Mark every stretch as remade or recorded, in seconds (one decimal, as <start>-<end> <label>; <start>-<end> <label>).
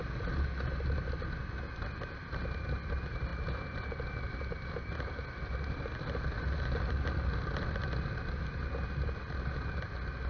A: 0.0-10.3 recorded